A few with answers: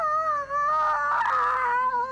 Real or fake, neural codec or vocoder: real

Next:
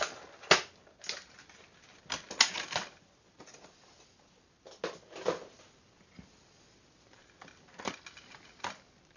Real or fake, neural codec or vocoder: real